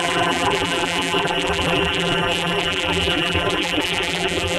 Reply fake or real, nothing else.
fake